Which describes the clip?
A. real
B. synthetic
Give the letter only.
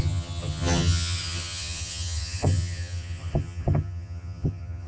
B